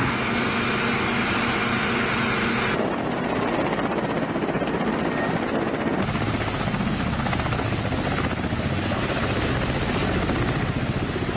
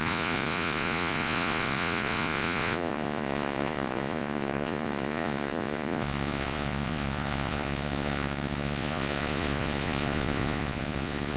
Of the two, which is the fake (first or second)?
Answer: second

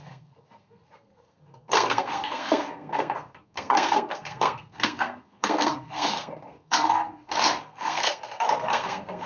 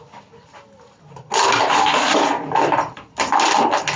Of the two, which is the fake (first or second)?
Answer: first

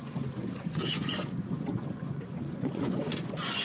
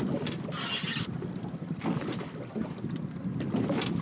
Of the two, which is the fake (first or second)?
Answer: first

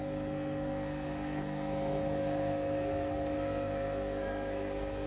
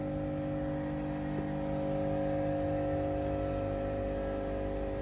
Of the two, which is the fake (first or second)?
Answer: first